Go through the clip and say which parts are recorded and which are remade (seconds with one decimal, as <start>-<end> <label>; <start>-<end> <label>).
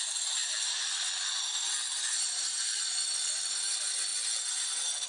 0.0-5.1 recorded